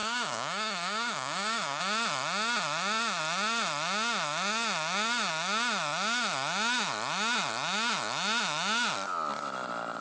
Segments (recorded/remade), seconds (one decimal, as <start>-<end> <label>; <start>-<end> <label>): 0.0-1.8 remade; 1.8-10.0 recorded